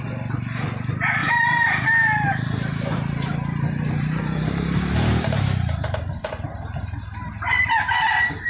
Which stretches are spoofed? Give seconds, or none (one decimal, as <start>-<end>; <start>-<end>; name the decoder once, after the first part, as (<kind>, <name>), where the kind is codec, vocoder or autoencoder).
1.2-6.2 (vocoder, BigVGAN v2)